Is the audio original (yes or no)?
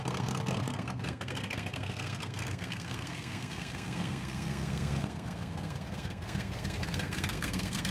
no